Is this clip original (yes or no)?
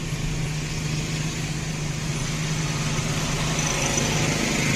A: yes